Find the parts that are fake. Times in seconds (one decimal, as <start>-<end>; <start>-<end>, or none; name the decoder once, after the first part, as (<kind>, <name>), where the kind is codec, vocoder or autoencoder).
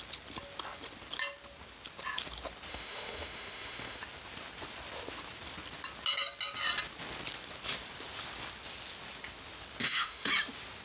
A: 2.7-4.0 (autoencoder, DAC-VAE); 9.8-10.3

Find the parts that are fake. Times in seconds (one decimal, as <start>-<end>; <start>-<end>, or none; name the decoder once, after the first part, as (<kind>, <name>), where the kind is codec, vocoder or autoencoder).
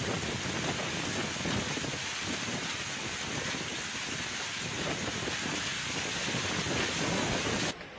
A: none